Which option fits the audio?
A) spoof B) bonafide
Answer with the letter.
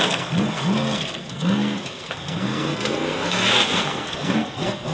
A